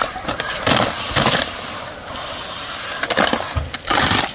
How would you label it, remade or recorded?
recorded